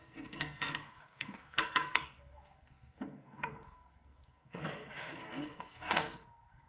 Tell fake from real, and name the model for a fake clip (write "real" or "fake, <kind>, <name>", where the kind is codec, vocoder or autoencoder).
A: fake, codec, SNAC